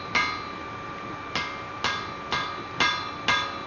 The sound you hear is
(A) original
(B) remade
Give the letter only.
A